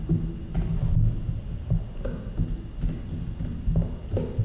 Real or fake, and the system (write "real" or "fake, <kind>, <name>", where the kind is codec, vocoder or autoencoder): real